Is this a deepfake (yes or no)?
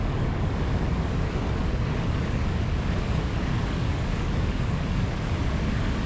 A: yes